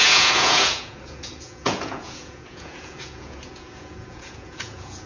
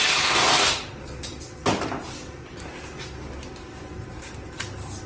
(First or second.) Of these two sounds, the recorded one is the second